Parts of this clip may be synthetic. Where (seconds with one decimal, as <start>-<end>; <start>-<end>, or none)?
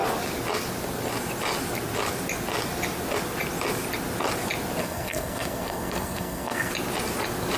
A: 4.8-6.7